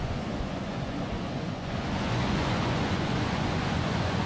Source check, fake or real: fake